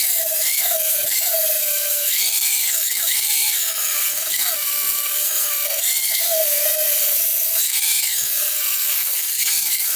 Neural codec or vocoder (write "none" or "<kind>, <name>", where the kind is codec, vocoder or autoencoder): codec, SNAC